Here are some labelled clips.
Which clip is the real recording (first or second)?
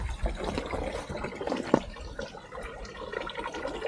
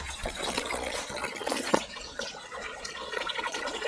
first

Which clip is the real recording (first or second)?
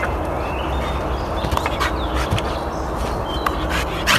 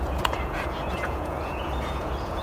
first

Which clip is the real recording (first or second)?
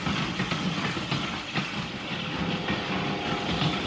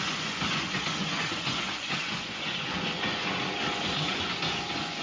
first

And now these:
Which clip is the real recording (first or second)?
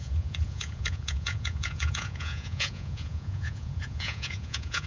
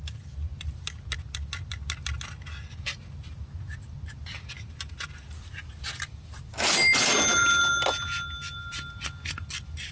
second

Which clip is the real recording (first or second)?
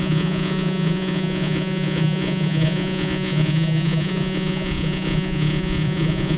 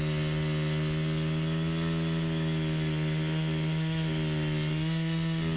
second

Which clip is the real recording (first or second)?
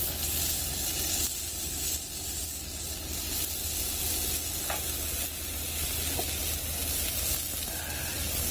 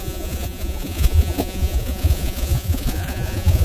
first